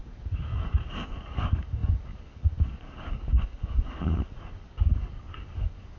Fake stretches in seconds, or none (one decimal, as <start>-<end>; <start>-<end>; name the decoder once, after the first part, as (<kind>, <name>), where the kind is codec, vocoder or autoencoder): 0.0-6.0 (codec, DAC)